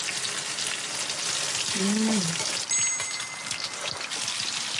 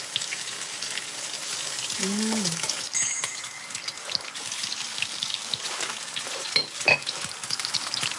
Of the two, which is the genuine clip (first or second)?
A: first